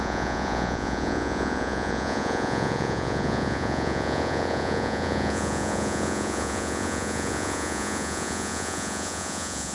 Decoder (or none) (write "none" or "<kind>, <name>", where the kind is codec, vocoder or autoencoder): vocoder, Vocos